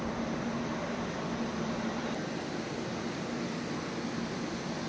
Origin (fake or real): real